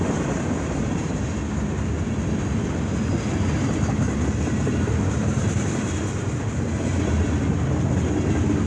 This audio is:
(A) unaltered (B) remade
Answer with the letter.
A